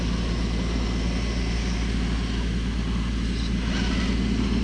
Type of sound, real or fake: real